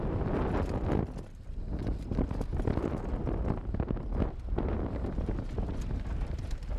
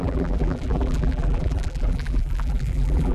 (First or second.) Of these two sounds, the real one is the first